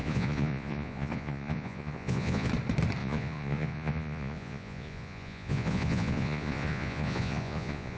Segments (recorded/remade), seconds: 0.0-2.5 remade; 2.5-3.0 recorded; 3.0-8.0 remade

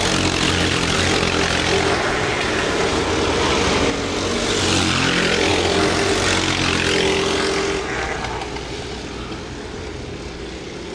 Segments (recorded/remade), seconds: 0.0-10.9 recorded

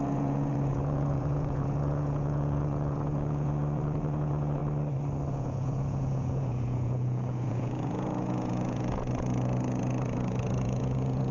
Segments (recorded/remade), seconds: 0.0-4.6 remade; 4.6-5.3 recorded; 5.3-11.3 remade

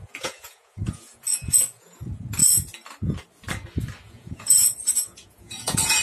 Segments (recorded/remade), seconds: 0.0-2.4 remade; 2.4-4.0 recorded; 4.0-6.0 remade

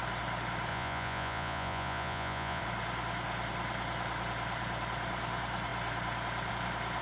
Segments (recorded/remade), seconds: 0.0-0.7 recorded; 0.7-2.6 remade; 2.6-7.0 recorded

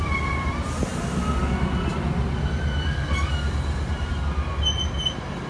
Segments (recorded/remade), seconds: 0.0-5.5 recorded

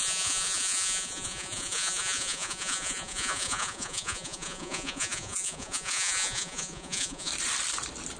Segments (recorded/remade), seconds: 0.0-7.3 remade; 7.3-8.2 recorded